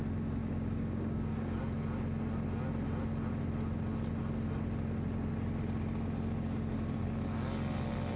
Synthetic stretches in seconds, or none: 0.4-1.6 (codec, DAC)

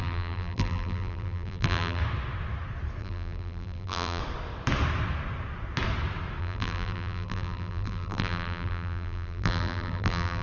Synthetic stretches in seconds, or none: 0.0-2.0 (vocoder, BigVGAN v2); 3.0-4.2; 6.4-10.4

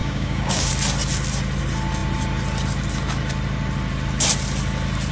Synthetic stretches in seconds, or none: 0.0-0.7 (codec, DAC)

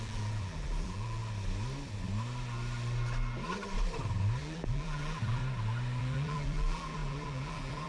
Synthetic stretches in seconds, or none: 0.0-1.2 (vocoder, BigVGAN v2); 4.4-5.4; 6.0-7.9

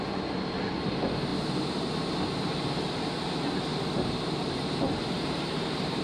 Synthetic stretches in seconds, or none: 3.7-6.0 (vocoder, BigVGAN v2)

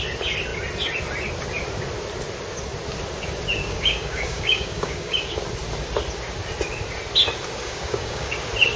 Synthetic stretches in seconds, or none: 3.6-5.3 (codec, DAC); 7.6-8.3